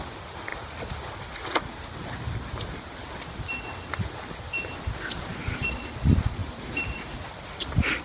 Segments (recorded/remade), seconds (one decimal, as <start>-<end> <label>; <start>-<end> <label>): 0.0-6.4 recorded; 6.4-7.2 remade; 7.2-8.0 recorded